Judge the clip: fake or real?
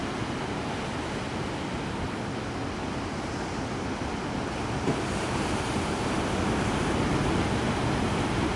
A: real